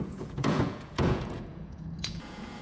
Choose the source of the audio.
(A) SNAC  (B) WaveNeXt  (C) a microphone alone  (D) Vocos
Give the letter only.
D